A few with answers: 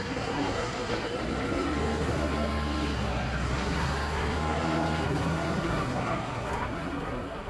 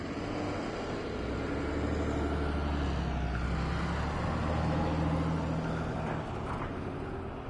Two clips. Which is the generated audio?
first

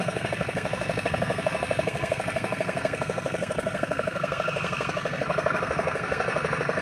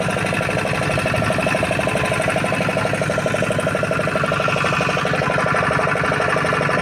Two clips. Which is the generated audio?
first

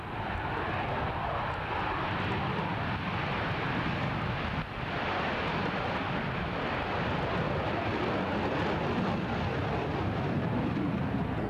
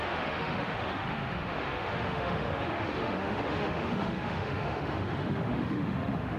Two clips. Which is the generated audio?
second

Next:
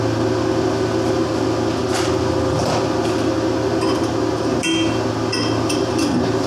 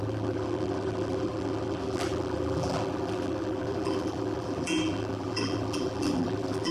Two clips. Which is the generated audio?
second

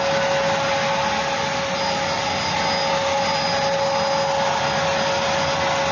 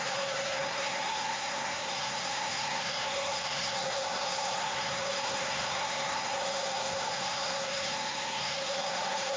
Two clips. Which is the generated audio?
second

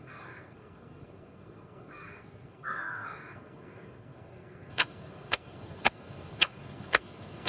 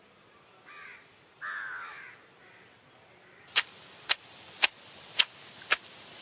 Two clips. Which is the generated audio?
first